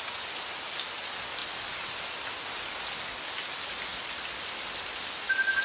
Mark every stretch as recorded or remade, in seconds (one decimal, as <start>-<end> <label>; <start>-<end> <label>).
0.0-5.6 recorded